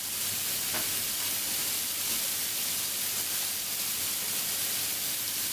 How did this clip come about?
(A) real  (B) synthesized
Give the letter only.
A